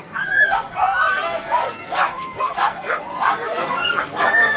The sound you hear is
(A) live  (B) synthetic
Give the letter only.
B